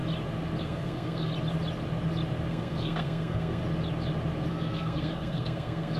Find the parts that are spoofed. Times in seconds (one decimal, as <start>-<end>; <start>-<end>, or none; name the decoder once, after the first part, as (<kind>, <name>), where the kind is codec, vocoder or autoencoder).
0.6-1.3 (codec, SNAC); 2.5-3.6; 4.5-6.0

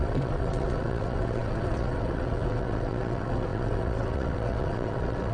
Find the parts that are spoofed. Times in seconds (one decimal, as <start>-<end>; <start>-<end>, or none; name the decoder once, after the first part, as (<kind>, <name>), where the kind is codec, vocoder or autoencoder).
0.0-5.3 (vocoder, WaveNeXt)

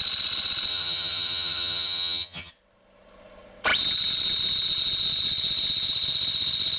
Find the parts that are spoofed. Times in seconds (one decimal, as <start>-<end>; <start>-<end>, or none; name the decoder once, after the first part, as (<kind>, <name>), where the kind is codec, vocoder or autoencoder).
0.7-2.5 (vocoder, HiFi-GAN)

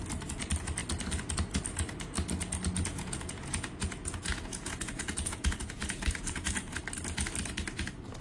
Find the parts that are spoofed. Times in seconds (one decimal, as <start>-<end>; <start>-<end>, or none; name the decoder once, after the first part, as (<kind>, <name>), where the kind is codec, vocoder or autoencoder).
2.9-6.8 (vocoder, Vocos)

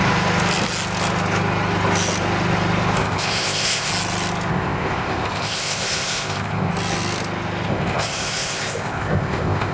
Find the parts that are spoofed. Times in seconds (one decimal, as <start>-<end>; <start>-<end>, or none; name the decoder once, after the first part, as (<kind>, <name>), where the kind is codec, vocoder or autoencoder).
3.0-3.9 (codec, ZipCodec); 4.5-6.7; 7.7-9.7

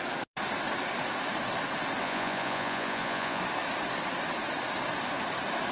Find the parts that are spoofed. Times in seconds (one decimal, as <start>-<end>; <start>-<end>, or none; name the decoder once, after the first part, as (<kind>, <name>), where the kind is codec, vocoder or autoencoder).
2.0-3.4 (vocoder, Vocos)

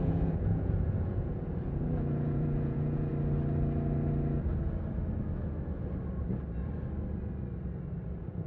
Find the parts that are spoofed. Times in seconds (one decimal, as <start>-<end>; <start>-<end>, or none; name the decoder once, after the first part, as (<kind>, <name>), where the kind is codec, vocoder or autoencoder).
0.0-3.1 (vocoder, Vocos); 8.1-8.5